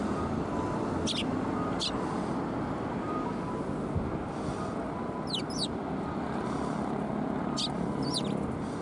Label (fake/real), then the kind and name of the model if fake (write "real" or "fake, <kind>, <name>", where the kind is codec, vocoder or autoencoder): real